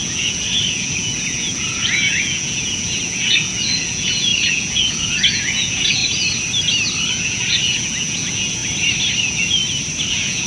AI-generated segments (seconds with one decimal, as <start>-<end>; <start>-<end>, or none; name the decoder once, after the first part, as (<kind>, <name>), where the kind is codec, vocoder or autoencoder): 0.0-6.0 (vocoder, Vocos); 7.1-8.6; 9.2-9.6; 10.1-10.5